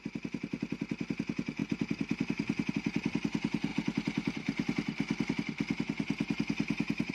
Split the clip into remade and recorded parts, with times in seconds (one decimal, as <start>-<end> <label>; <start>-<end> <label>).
0.0-7.1 recorded